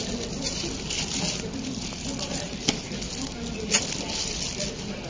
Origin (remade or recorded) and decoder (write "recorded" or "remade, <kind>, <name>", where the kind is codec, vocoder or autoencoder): recorded